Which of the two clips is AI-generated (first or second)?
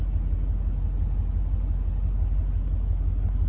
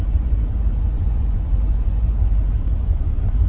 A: second